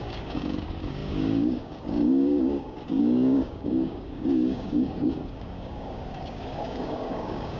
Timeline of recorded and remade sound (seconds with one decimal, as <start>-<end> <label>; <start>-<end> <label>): 0.0-7.6 remade